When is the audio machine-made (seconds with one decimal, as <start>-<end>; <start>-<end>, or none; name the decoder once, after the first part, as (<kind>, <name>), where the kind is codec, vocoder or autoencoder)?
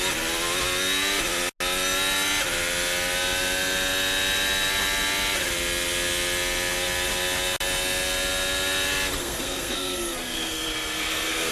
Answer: 9.2-11.5 (codec, SNAC)